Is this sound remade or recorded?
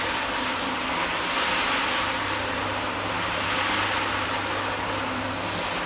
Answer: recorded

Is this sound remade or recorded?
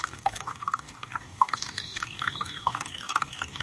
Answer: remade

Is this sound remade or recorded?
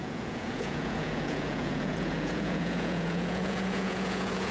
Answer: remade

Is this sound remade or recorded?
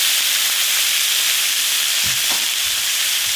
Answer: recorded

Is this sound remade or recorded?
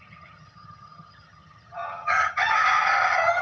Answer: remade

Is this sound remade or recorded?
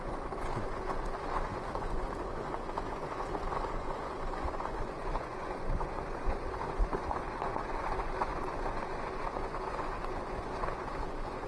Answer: remade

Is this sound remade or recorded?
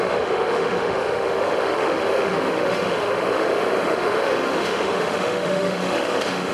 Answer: remade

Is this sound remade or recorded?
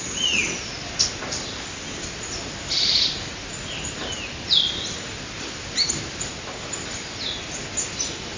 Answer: recorded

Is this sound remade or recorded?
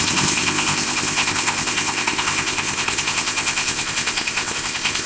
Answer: remade